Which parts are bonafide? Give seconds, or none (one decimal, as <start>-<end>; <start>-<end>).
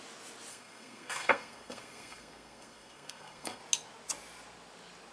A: 0.0-0.5; 3.6-5.1